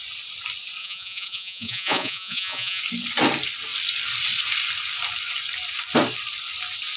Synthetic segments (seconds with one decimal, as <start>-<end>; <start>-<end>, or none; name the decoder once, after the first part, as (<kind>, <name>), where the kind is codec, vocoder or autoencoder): 0.8-2.8 (vocoder, Vocos)